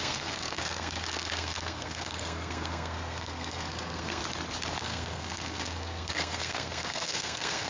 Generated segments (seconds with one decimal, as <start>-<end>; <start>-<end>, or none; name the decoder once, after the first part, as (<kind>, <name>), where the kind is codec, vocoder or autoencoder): 0.0-4.2 (codec, SNAC); 4.8-7.7